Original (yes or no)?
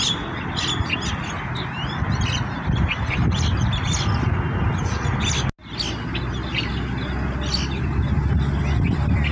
yes